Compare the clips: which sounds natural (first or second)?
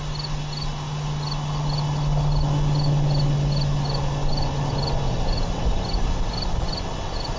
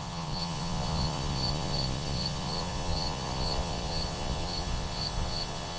first